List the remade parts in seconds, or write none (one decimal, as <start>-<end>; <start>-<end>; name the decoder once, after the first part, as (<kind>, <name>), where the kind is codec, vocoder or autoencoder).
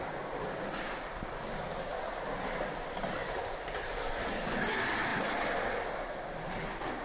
none